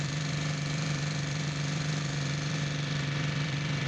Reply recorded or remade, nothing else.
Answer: remade